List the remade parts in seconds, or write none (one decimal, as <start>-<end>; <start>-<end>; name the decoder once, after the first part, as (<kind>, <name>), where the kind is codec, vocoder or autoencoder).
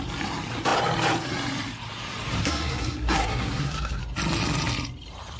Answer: 2.4-4.0 (codec, SNAC)